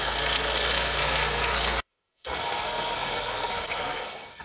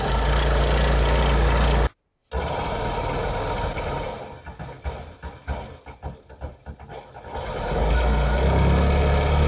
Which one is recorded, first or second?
second